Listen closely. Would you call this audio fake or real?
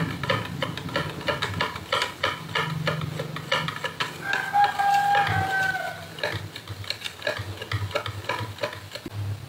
real